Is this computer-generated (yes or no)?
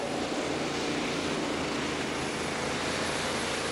no